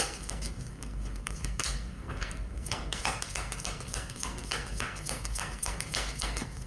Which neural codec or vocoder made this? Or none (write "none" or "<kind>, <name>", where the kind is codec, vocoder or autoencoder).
codec, SNAC